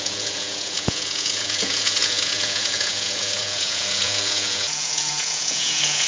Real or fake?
fake